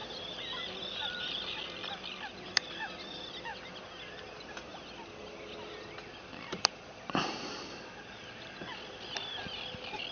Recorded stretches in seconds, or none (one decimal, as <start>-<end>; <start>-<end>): 0.0-10.1